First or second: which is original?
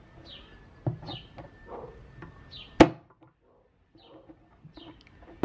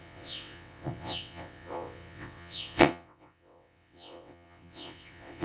first